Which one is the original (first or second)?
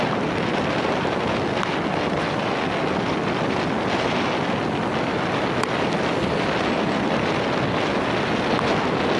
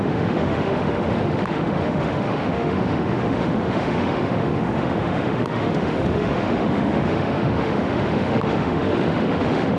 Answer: first